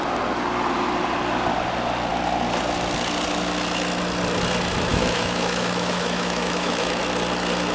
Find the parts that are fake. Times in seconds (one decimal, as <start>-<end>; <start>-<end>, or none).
4.9-7.0